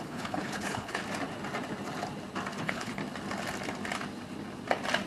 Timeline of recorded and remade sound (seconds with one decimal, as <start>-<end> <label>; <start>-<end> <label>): 0.0-1.0 remade; 1.0-2.6 recorded; 2.6-3.0 remade; 3.0-5.1 recorded